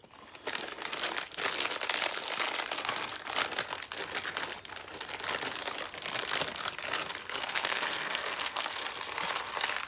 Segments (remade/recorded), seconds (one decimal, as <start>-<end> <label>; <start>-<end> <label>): 0.0-7.2 recorded; 7.2-8.8 remade; 8.8-9.9 recorded

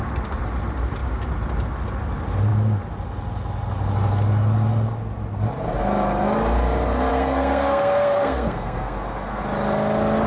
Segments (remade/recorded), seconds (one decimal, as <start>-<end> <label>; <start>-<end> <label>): 0.0-7.1 recorded; 7.1-9.4 remade; 9.4-10.3 recorded

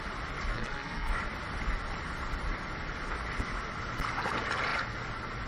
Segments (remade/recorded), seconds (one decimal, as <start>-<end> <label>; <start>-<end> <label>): 0.0-0.5 recorded; 0.5-1.1 remade; 1.1-5.5 recorded

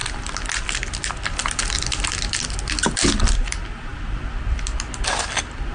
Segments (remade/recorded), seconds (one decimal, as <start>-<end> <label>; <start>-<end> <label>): 0.0-5.7 recorded

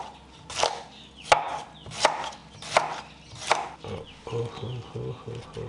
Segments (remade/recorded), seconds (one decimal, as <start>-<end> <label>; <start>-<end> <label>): 0.0-5.7 recorded

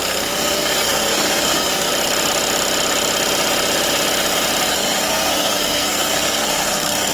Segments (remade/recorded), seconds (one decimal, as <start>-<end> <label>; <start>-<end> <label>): 0.0-1.9 remade; 1.9-4.7 recorded; 4.7-7.1 remade

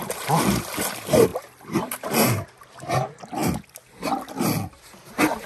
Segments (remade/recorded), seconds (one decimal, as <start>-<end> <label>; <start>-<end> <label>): 0.0-5.5 recorded